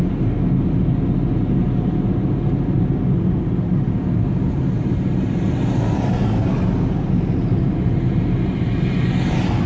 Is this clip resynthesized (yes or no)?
no